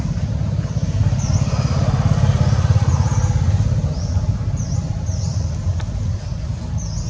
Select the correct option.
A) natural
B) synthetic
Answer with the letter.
B